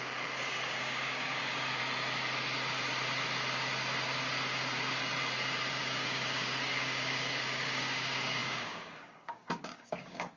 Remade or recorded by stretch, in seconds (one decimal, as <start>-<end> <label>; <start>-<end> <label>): 0.0-1.8 remade; 1.8-5.7 recorded; 5.7-10.4 remade